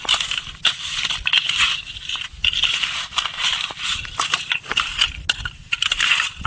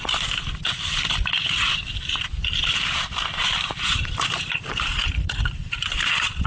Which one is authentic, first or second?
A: first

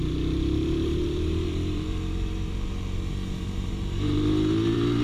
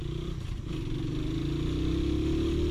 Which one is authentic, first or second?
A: second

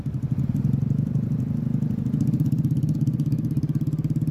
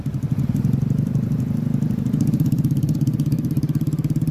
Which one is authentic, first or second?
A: first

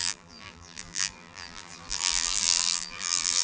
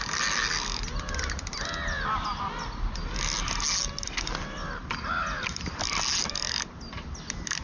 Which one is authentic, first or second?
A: second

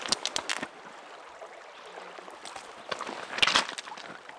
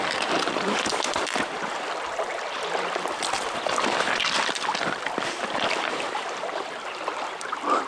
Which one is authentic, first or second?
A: first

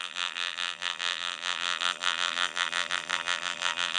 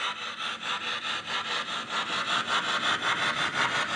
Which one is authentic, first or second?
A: second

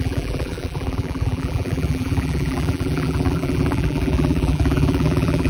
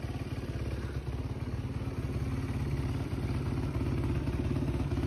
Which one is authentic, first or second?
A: second